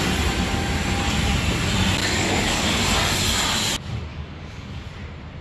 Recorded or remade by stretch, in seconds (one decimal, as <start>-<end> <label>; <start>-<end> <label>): 0.0-2.0 recorded; 2.0-2.8 remade; 2.8-4.1 recorded; 4.1-4.9 remade; 4.9-5.4 recorded